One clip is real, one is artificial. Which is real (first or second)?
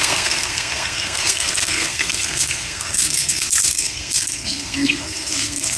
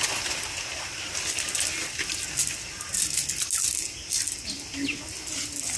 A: second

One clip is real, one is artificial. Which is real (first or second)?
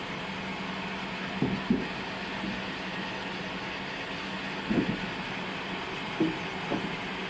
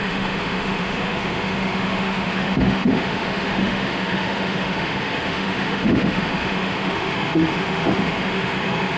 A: first